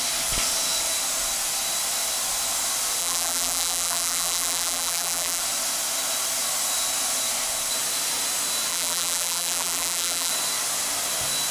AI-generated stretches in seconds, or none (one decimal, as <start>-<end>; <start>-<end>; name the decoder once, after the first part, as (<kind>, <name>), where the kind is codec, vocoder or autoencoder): 3.0-5.4 (vocoder, BigVGAN v2); 8.7-10.3